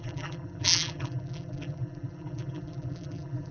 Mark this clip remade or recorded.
remade